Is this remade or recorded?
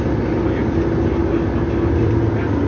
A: recorded